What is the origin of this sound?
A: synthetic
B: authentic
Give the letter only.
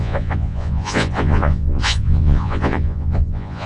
A